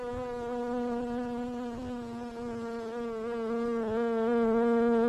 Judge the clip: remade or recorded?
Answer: recorded